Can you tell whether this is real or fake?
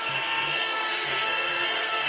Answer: fake